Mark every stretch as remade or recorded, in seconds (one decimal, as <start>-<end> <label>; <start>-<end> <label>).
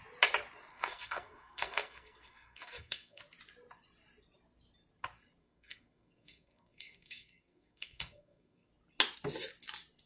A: 0.0-0.7 recorded; 0.7-3.2 remade; 3.2-5.4 recorded; 5.4-8.7 remade; 8.7-10.1 recorded